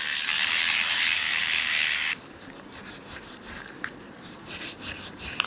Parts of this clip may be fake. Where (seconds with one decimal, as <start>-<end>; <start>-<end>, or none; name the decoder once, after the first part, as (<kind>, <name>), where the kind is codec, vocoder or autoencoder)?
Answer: 0.0-5.5 (vocoder, BigVGAN v2)